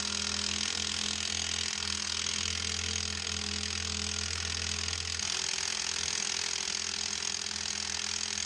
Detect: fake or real real